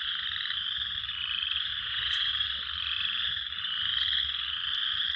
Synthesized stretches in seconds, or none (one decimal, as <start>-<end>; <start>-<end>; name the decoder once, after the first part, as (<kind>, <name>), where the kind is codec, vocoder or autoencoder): 1.7-2.3 (vocoder, Vocos)